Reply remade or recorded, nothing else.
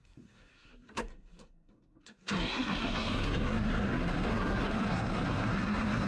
remade